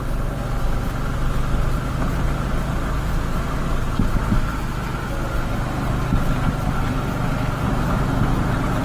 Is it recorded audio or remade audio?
recorded